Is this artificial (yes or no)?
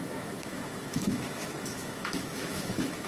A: yes